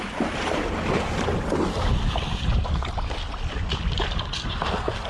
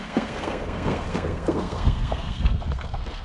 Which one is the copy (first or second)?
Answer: second